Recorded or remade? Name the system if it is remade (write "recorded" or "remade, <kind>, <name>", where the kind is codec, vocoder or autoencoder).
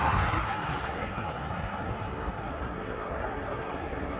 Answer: remade, codec, SNAC